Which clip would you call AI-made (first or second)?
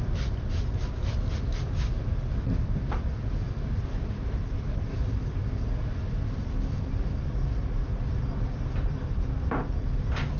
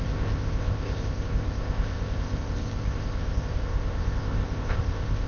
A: second